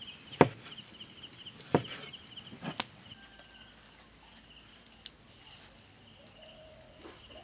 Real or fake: real